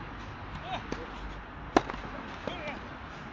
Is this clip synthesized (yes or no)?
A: no